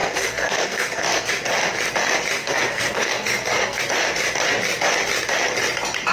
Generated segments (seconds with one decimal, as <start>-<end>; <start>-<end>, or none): 0.0-1.3; 2.4-3.8